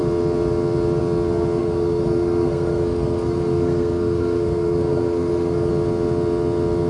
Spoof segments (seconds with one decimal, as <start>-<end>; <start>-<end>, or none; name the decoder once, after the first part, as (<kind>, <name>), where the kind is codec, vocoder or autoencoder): 1.6-5.7 (codec, SNAC)